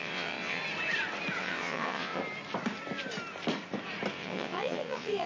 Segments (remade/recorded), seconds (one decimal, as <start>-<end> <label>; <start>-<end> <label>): 0.0-0.6 remade; 0.6-1.4 recorded; 1.4-2.2 remade; 2.2-4.1 recorded; 4.1-5.3 remade